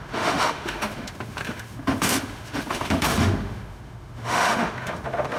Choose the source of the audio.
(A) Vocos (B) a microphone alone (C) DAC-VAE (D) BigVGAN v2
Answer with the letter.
C